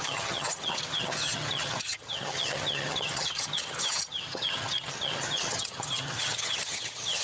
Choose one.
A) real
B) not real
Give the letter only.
B